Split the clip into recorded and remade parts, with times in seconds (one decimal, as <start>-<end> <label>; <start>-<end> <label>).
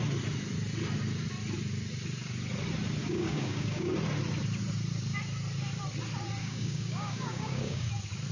0.0-3.0 recorded; 3.0-3.9 remade; 3.9-6.4 recorded; 6.4-7.9 remade; 7.9-8.3 recorded